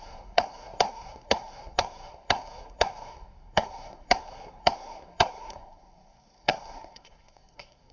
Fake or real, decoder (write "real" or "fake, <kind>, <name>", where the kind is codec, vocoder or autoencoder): fake, codec, SNAC